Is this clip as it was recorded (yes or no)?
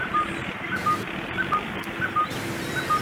yes